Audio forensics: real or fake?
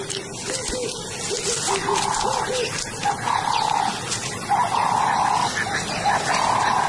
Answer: real